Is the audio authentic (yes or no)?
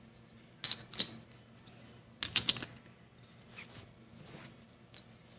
yes